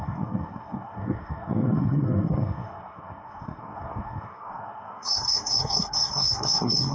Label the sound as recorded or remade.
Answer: remade